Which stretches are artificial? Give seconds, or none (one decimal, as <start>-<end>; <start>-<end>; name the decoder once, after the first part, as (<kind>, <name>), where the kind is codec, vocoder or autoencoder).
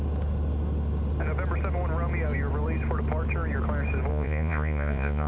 4.1-5.3 (vocoder, Vocos)